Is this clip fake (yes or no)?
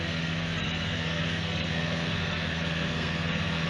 yes